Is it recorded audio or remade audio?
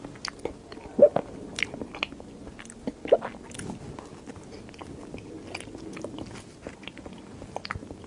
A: recorded